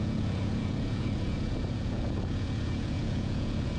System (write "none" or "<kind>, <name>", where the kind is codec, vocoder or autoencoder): vocoder, Vocos